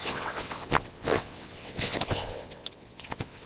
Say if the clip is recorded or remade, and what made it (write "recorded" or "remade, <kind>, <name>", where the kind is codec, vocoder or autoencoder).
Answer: remade, vocoder, WaveNeXt